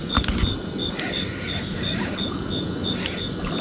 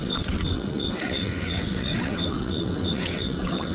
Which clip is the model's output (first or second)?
second